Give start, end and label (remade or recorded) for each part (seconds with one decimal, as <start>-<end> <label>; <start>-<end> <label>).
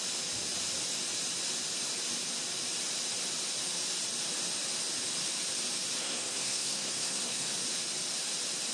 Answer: 0.0-6.0 recorded; 6.0-7.5 remade; 7.5-8.7 recorded